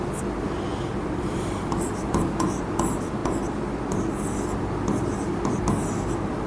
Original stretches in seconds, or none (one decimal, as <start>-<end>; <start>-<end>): 0.0-0.7; 2.4-6.5